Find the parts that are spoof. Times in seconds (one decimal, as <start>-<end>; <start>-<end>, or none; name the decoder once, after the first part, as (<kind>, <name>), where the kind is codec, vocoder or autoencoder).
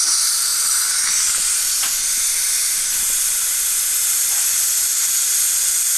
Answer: none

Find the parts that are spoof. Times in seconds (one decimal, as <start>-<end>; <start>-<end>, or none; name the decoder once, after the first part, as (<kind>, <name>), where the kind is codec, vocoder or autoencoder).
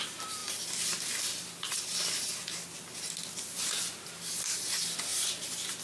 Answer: none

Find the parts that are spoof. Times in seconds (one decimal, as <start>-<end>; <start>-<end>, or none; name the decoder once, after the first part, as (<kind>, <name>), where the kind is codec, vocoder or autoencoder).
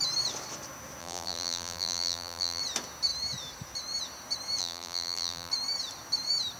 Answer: 1.0-2.6 (vocoder, BigVGAN v2); 4.6-5.5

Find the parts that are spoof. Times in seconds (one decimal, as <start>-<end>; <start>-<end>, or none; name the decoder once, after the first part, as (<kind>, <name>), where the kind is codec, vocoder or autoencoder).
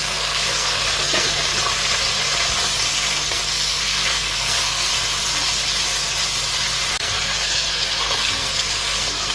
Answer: 0.0-1.5 (codec, SNAC); 2.9-4.9; 6.9-9.3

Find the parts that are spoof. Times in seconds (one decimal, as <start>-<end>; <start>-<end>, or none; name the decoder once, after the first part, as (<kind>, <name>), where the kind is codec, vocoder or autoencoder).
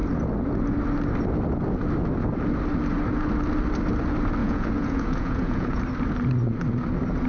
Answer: 4.4-5.8 (vocoder, Vocos)